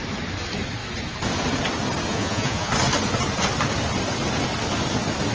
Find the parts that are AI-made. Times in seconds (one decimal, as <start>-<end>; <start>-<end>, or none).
2.1-2.7